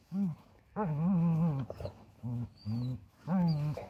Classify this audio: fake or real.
fake